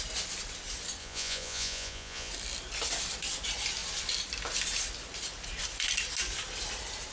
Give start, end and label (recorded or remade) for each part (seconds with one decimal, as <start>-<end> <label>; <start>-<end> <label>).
0.0-1.0 recorded; 1.0-2.3 remade; 2.3-7.1 recorded